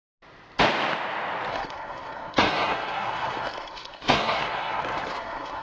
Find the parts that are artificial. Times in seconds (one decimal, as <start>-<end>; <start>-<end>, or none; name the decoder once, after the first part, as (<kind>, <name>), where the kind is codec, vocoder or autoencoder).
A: 1.5-5.6 (codec, SNAC)